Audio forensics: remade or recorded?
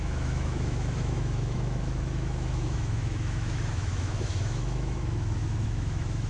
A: remade